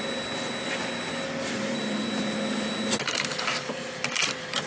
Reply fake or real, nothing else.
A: real